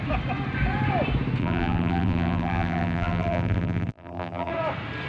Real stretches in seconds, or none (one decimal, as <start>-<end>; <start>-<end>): 0.0-1.4; 4.5-5.1